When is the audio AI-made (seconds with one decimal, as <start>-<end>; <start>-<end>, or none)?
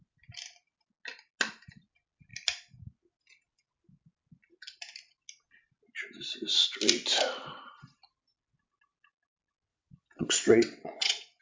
9.7-11.4